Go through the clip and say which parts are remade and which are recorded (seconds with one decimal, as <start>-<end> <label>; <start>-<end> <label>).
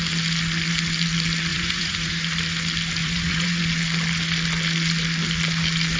0.0-1.5 recorded; 1.5-2.1 remade; 2.1-3.0 recorded; 3.0-3.6 remade; 3.6-6.0 recorded